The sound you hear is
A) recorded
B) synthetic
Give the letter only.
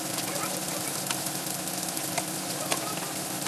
A